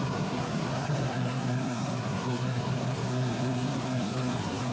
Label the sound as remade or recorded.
remade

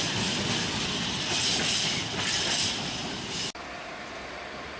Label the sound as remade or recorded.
recorded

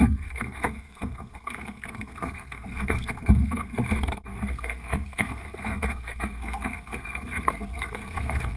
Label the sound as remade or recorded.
remade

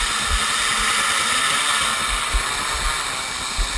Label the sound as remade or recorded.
recorded